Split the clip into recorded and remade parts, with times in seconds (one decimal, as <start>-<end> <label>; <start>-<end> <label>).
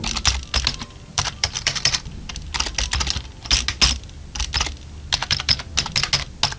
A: 0.0-1.1 recorded; 1.1-1.9 remade; 1.9-5.2 recorded; 5.2-5.7 remade; 5.7-6.6 recorded